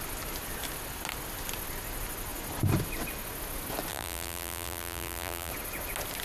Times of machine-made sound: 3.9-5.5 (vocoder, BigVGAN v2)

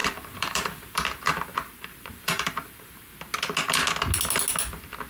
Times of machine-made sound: 0.0-3.1 (vocoder, BigVGAN v2)

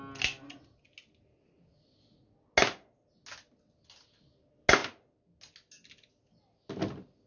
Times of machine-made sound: none

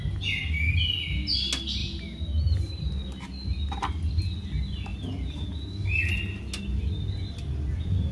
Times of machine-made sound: none

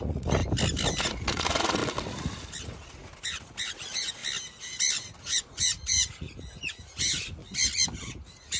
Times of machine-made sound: 0.0-0.4 (vocoder, Vocos); 1.0-1.8; 2.6-4.2; 5.2-7.4; 8.0-8.6

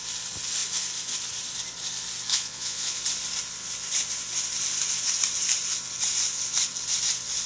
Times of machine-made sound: 2.3-3.0 (vocoder, Vocos)

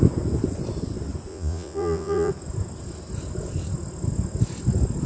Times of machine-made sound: 1.3-2.3 (vocoder, Vocos)

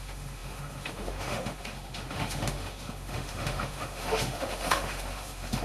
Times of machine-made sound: 0.0-5.6 (autoencoder, DAC-VAE)